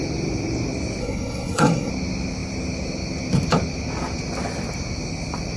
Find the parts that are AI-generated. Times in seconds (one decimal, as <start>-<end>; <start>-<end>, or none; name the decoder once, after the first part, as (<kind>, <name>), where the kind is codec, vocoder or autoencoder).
1.0-1.9 (codec, SNAC)